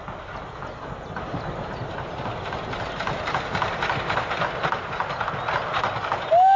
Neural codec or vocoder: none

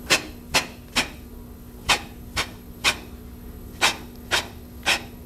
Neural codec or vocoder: none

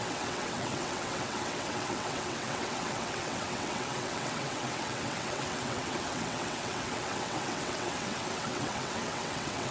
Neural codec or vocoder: vocoder, WaveNeXt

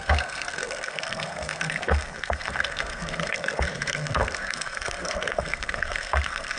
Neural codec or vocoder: codec, SNAC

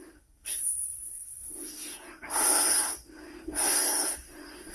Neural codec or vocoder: codec, SNAC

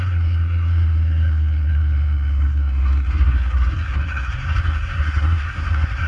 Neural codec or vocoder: codec, SNAC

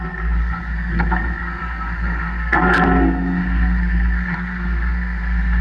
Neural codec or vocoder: codec, SNAC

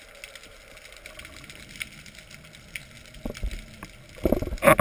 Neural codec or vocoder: none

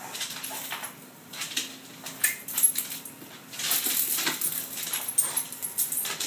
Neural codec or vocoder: none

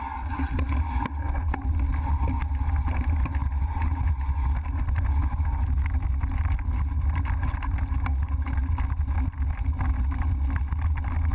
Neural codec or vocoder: none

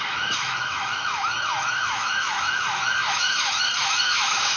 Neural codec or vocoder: autoencoder, DAC-VAE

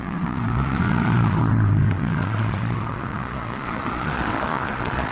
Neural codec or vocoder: vocoder, Vocos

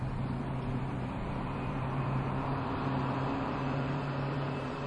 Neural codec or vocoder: vocoder, BigVGAN v2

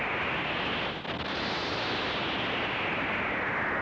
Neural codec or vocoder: none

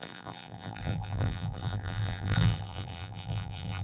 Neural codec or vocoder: vocoder, BigVGAN v2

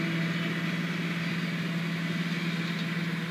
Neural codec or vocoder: none